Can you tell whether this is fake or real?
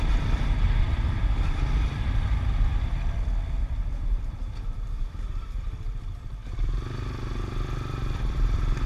fake